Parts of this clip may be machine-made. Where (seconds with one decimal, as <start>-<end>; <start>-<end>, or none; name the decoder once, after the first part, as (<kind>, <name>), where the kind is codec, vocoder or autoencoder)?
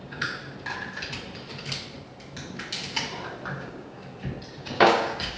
0.0-0.4 (codec, DAC); 3.6-4.0; 4.6-5.4